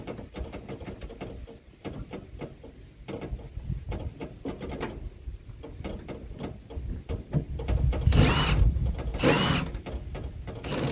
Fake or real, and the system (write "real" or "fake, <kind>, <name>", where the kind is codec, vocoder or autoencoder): real